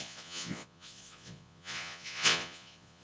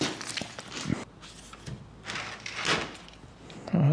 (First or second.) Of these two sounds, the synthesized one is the first